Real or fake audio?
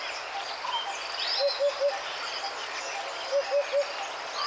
real